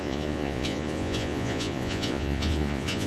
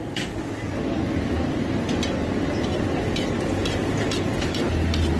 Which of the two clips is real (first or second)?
second